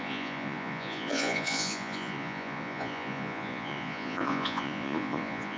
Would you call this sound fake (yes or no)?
yes